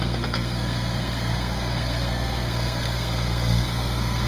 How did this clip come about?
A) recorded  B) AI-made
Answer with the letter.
B